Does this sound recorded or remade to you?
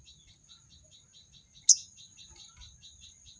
recorded